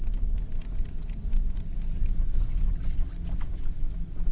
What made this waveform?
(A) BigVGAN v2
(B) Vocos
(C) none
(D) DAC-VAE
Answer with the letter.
C